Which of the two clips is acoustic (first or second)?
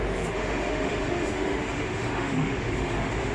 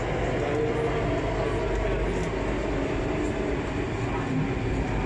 second